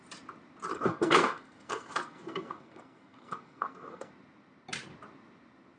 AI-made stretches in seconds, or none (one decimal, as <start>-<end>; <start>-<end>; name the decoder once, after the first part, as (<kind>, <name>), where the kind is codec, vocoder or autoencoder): 0.7-4.1 (codec, SNAC)